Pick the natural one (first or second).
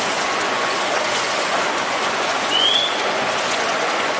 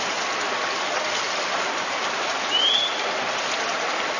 second